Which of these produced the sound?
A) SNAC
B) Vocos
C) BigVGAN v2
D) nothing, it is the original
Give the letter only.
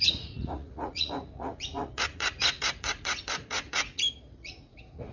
B